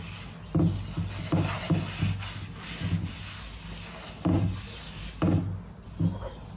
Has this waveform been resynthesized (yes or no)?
no